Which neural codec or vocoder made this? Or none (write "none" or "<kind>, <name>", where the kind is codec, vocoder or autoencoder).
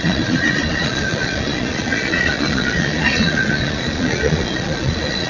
vocoder, Vocos